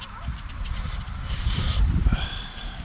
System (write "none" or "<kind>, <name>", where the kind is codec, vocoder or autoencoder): vocoder, BigVGAN v2